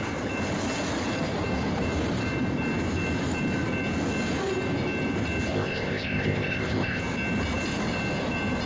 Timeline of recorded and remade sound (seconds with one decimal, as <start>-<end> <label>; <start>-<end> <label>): 0.0-5.5 recorded; 5.5-7.0 remade; 7.0-8.7 recorded